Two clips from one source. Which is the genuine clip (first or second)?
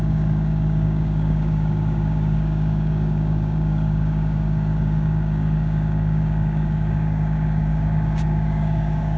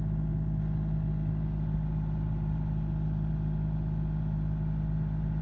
second